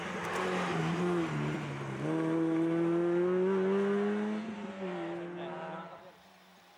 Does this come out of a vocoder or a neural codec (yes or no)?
no